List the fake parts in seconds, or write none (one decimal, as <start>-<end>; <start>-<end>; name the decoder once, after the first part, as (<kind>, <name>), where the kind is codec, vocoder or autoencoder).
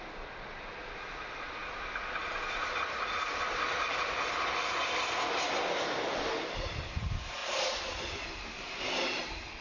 none